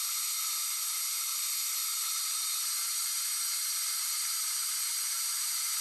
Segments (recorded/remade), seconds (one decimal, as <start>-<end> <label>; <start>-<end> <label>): 0.0-5.8 recorded